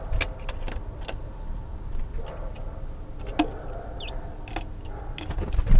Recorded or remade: recorded